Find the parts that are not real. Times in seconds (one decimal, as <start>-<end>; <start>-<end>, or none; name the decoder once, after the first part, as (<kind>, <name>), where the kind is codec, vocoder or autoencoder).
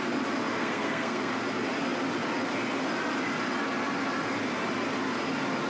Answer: 0.6-1.3 (codec, SNAC)